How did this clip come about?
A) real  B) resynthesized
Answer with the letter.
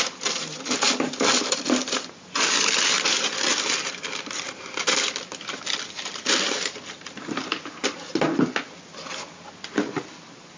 A